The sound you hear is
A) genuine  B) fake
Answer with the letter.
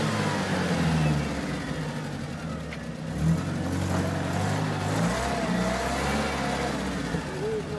A